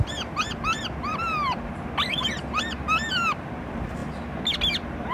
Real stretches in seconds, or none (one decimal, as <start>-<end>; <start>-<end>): 0.0-5.1